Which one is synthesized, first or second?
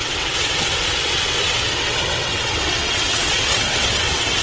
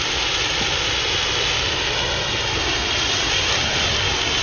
first